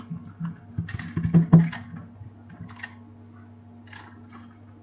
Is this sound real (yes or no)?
yes